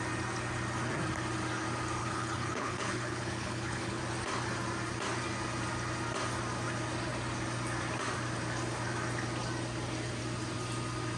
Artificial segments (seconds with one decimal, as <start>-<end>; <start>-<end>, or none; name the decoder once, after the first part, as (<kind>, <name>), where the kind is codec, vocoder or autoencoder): 2.0-4.0 (codec, HILCodec)